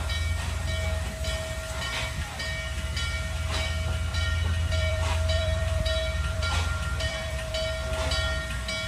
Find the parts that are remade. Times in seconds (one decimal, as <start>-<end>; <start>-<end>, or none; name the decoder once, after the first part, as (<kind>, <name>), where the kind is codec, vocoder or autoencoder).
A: 4.1-7.5 (vocoder, BigVGAN v2)